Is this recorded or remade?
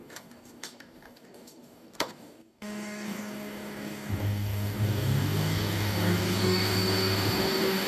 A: remade